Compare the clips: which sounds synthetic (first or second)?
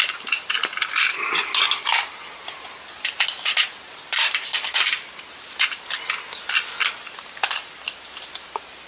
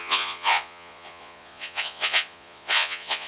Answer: second